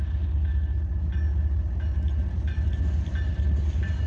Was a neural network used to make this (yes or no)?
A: no